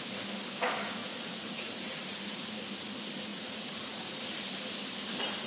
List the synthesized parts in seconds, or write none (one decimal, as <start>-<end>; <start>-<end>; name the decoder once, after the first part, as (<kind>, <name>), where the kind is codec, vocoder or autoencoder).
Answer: 1.0-1.7 (vocoder, Vocos); 2.1-2.7; 3.3-4.2